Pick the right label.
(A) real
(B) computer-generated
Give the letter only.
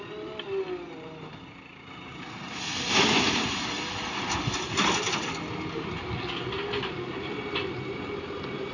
A